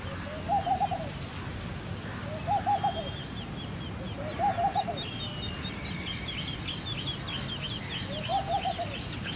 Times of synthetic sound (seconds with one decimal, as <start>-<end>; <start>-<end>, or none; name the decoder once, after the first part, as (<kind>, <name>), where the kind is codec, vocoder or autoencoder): none